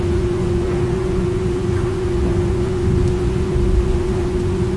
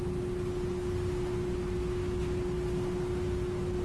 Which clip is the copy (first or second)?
first